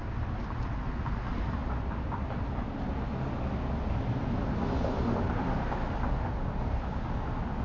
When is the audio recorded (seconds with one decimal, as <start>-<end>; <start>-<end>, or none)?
0.0-7.6